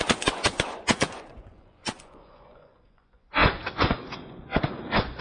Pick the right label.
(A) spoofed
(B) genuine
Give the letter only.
A